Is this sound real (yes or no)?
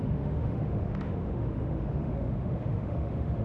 no